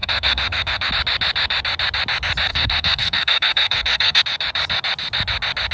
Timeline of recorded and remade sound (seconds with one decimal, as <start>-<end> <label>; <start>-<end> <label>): 0.0-0.9 remade; 0.9-2.5 recorded; 2.5-4.2 remade; 4.2-5.7 recorded